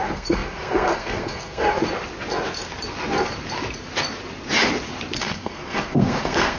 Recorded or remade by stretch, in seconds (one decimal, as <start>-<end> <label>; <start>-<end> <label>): 0.0-1.8 remade; 1.8-5.2 recorded; 5.2-6.6 remade